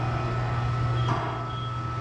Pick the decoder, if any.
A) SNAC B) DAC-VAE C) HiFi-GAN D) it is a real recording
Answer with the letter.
D